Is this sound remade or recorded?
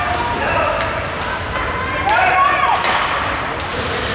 recorded